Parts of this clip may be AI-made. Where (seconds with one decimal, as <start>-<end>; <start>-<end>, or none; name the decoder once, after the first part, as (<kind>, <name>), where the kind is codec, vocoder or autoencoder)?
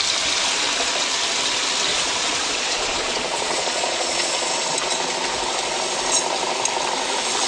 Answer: 1.9-4.5 (vocoder, Vocos)